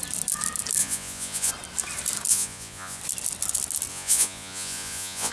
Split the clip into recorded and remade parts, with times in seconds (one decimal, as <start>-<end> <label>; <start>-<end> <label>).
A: 0.0-0.8 recorded; 0.8-1.5 remade; 1.5-2.3 recorded; 2.3-3.0 remade; 3.0-3.9 recorded; 3.9-5.3 remade